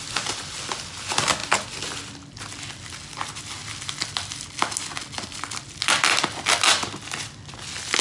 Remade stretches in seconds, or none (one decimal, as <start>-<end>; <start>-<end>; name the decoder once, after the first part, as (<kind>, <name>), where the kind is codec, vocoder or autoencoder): none